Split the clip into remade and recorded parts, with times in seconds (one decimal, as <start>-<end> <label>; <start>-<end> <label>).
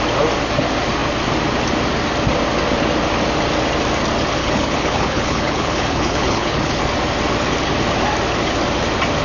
0.0-4.4 recorded; 4.4-6.8 remade; 6.8-9.2 recorded